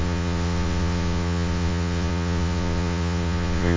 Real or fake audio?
fake